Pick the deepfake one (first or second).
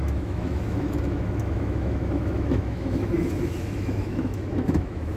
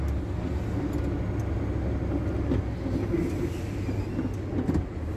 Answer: first